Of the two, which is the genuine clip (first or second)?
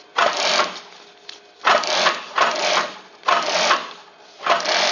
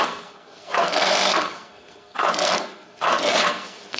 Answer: first